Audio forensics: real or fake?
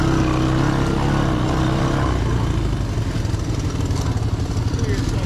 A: real